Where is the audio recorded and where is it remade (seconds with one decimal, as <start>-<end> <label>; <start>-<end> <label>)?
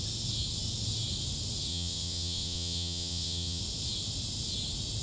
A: 0.0-1.7 recorded; 1.7-3.6 remade; 3.6-5.0 recorded